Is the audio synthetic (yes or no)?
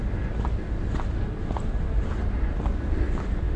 no